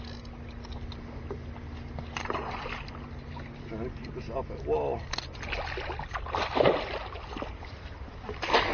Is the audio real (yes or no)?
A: yes